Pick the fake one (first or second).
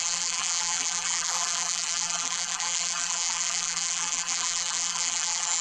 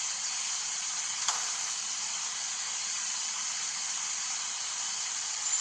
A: first